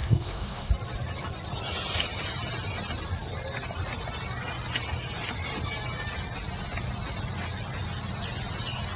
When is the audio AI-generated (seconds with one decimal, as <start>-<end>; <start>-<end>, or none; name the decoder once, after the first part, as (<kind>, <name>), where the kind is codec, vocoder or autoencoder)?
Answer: 0.0-0.7 (codec, SNAC)